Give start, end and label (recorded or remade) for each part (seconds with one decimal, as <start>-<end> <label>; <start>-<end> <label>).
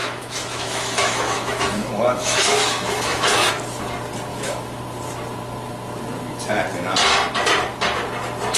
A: 0.0-3.5 remade; 3.5-4.3 recorded; 4.3-4.8 remade; 4.8-8.6 recorded